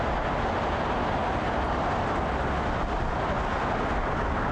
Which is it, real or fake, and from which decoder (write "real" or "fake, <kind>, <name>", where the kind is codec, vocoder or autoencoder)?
real